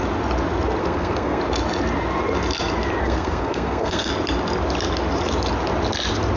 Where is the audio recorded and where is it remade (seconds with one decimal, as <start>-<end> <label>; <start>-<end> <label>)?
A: 0.0-0.8 recorded; 0.8-1.4 remade; 1.4-3.0 recorded; 3.0-4.1 remade; 4.1-6.4 recorded